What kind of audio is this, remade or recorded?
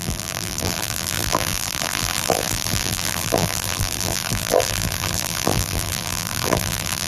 remade